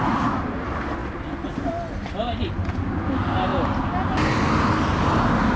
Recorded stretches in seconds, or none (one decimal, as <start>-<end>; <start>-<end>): 0.0-5.6